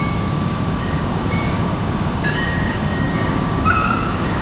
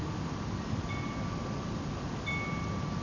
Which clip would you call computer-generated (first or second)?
first